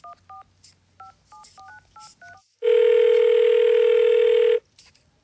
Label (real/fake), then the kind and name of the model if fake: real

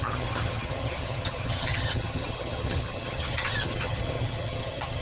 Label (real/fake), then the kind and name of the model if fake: fake, vocoder, HiFi-GAN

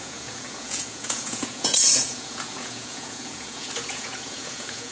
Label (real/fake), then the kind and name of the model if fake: fake, vocoder, Vocos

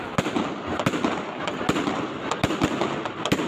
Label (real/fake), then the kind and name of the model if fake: real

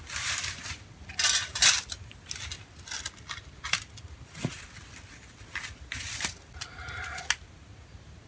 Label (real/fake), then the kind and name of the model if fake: real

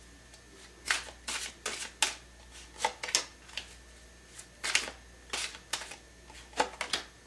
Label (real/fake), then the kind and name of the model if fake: real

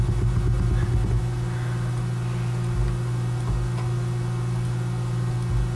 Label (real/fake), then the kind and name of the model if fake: real